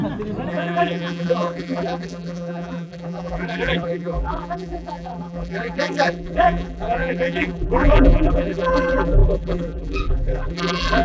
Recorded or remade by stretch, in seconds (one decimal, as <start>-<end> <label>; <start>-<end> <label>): 0.0-0.5 recorded; 0.5-11.0 remade